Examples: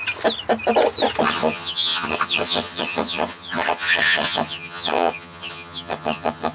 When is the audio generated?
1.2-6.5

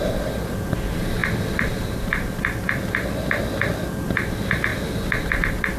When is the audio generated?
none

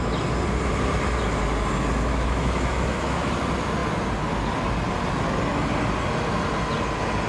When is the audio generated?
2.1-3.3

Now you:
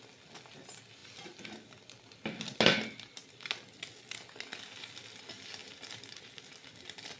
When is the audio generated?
none